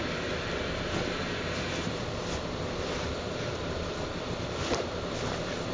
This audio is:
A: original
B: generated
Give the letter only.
B